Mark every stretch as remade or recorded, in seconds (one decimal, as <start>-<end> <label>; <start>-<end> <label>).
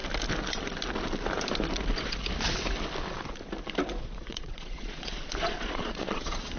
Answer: 0.0-4.0 recorded; 4.0-6.6 remade